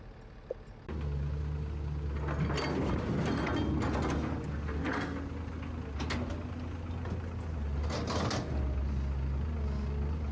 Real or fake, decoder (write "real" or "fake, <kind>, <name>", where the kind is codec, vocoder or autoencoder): real